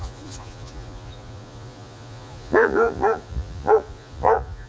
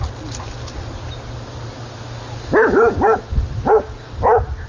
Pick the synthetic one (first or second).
first